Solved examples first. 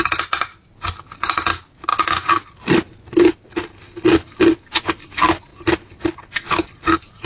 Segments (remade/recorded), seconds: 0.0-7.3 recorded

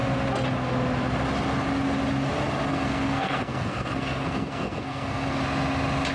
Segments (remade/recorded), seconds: 0.0-2.7 recorded; 2.7-5.4 remade; 5.4-6.1 recorded

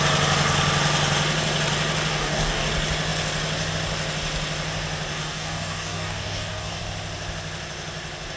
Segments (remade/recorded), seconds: 0.0-2.1 recorded; 2.1-2.7 remade; 2.7-5.1 recorded; 5.1-6.8 remade; 6.8-8.4 recorded